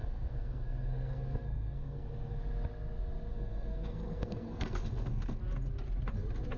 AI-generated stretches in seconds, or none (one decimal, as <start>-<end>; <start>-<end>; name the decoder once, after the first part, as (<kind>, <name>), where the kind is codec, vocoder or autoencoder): 0.0-2.4 (codec, SNAC); 3.3-5.4